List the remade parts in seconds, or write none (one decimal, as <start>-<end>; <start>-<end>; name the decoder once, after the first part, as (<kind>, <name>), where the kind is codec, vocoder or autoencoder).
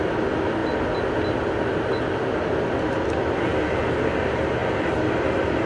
none